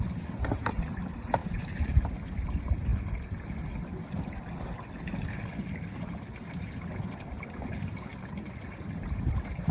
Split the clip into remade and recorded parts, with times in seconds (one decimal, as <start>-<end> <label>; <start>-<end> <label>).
0.0-1.4 recorded; 1.4-2.0 remade; 2.0-9.7 recorded